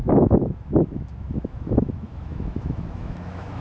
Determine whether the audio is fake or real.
fake